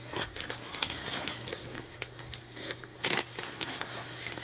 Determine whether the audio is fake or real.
fake